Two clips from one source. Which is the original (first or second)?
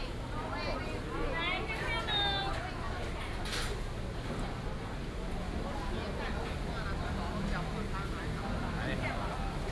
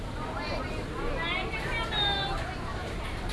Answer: first